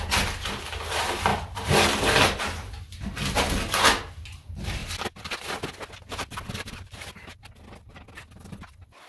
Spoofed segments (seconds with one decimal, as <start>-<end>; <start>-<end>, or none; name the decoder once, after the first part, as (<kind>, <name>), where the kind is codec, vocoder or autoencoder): none